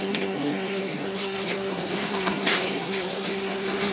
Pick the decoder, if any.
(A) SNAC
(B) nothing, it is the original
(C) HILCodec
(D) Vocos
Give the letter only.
A